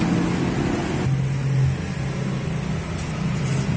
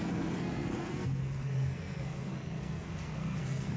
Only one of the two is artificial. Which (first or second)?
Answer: second